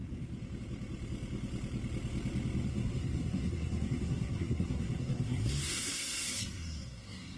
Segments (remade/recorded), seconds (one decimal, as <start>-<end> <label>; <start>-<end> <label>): 0.0-2.7 recorded; 2.7-7.4 remade